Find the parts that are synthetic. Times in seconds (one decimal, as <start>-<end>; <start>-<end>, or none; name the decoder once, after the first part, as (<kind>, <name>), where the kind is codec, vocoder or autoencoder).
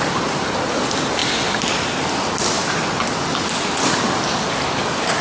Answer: none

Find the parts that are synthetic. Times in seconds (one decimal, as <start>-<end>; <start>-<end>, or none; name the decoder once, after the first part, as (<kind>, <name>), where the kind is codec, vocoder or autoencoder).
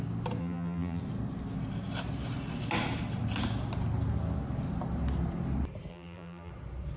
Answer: 0.4-1.0 (vocoder, BigVGAN v2); 5.9-6.5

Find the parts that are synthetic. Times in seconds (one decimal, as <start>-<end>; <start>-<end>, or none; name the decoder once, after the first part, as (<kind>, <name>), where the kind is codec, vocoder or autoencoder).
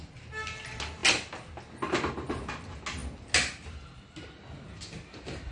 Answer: none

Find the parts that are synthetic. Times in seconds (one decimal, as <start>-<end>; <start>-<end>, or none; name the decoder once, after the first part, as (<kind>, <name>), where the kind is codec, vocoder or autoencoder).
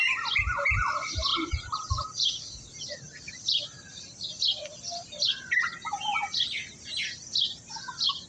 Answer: 1.3-2.8 (vocoder, BigVGAN v2)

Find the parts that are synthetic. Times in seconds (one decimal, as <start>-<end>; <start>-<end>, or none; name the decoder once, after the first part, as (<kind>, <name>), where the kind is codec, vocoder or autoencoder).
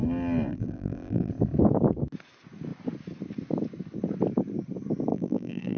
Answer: 0.5-1.3 (vocoder, BigVGAN v2); 5.1-5.8